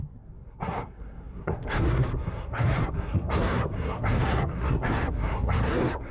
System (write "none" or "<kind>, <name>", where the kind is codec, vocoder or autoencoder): codec, SNAC